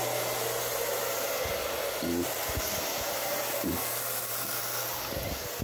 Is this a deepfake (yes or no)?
no